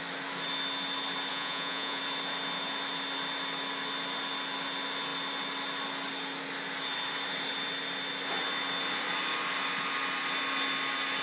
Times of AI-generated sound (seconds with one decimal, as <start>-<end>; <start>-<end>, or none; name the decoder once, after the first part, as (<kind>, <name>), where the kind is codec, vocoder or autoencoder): 1.3-2.0 (vocoder, Vocos)